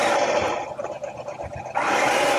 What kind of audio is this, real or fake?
real